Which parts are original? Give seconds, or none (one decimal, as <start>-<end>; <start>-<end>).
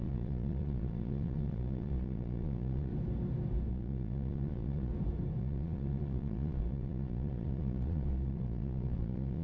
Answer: 2.9-3.7; 4.9-5.4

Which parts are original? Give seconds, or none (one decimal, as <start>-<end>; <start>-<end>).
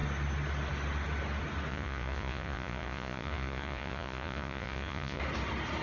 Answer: 0.0-1.7; 5.2-5.8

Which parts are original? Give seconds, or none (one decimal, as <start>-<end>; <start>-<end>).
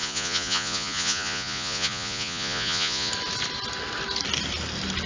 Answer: 3.1-5.1